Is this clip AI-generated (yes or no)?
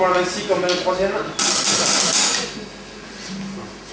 no